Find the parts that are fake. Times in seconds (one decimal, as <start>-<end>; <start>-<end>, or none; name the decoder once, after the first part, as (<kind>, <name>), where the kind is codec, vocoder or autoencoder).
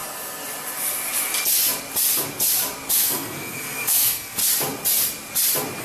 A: 2.9-4.4 (codec, SNAC)